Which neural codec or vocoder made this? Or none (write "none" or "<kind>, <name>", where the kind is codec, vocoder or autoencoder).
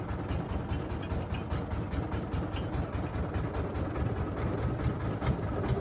none